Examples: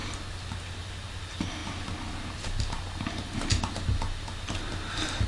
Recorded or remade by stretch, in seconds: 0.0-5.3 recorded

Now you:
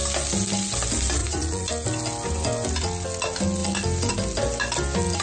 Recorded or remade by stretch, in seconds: 0.0-1.2 recorded; 1.2-1.7 remade; 1.7-5.2 recorded